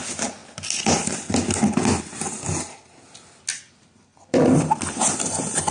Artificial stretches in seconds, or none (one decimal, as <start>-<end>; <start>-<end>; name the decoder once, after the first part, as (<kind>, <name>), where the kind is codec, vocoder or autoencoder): 4.1-5.7 (vocoder, BigVGAN v2)